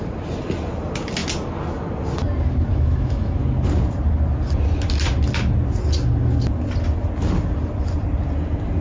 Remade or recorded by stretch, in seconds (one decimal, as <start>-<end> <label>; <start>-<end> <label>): 0.0-2.7 recorded; 2.7-3.4 remade; 3.4-8.8 recorded